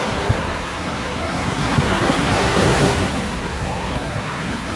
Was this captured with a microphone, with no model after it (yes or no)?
no